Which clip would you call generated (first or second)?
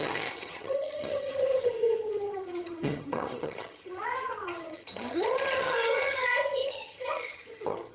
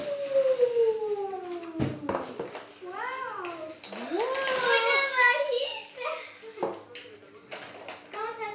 first